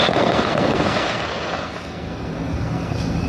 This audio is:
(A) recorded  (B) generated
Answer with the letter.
B